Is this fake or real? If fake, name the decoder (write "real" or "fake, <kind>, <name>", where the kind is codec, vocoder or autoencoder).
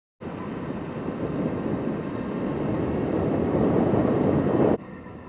real